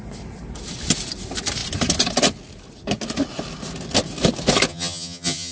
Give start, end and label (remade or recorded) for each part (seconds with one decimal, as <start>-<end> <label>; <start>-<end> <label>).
0.0-4.7 recorded; 4.7-5.5 remade

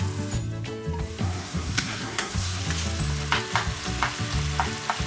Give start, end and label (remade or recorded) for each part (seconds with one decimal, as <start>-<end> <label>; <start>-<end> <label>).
0.0-1.2 recorded; 1.2-2.6 remade; 2.6-5.1 recorded

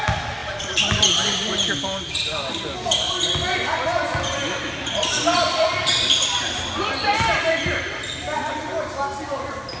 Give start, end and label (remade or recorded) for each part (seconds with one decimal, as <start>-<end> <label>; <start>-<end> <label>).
0.0-0.4 recorded; 0.4-2.6 remade; 2.6-9.8 recorded

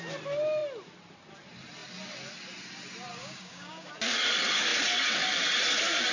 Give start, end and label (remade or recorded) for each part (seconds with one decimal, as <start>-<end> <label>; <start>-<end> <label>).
0.0-3.2 recorded; 3.2-3.9 remade; 3.9-6.1 recorded

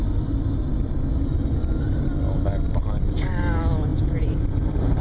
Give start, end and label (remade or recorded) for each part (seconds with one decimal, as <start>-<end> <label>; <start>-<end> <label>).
0.0-5.0 recorded